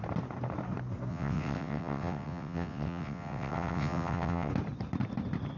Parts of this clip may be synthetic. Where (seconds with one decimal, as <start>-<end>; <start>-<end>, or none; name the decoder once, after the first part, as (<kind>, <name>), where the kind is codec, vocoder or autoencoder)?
1.1-4.5 (vocoder, WaveNeXt)